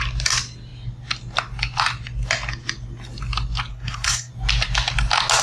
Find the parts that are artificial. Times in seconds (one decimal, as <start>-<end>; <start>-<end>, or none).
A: 3.7-4.3